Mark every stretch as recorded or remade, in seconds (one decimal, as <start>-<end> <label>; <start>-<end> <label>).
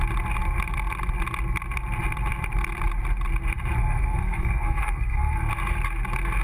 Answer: 0.0-3.8 recorded; 3.8-5.5 remade; 5.5-6.4 recorded